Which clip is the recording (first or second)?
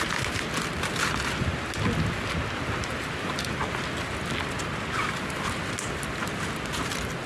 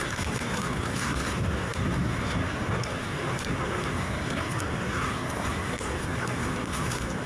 first